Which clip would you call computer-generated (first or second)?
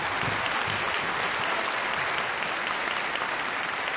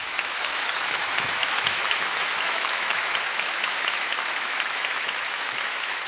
second